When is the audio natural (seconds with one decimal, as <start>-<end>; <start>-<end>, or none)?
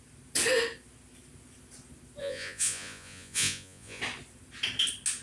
0.0-2.2; 4.0-5.2